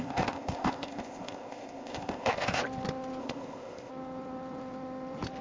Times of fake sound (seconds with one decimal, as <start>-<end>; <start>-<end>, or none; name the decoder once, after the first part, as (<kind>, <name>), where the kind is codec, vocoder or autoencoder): 0.0-2.6 (codec, ZipCodec); 3.2-3.9